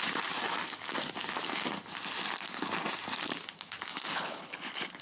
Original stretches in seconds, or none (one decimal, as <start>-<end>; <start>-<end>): 0.0-4.1